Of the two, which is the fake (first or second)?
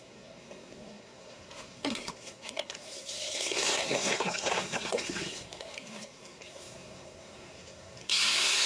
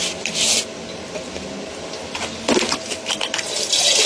first